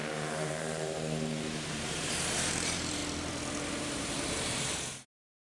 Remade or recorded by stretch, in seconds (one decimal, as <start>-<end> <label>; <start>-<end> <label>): 0.0-3.0 remade; 3.0-3.7 recorded; 3.7-5.4 remade